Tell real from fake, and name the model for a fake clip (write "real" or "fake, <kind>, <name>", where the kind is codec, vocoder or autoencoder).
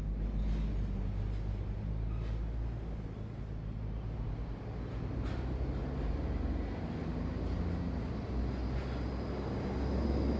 real